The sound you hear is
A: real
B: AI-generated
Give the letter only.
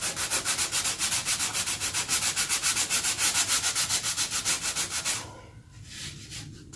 A